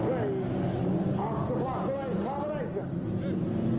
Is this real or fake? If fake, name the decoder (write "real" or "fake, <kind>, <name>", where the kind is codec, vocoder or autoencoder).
real